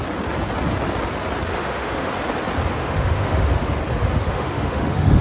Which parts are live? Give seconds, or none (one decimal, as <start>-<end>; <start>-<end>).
0.0-1.5; 2.1-2.8; 3.8-4.2